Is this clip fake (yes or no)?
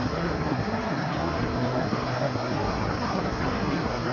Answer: yes